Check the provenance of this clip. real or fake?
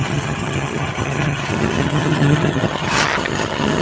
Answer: fake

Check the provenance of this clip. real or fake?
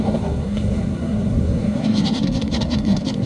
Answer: fake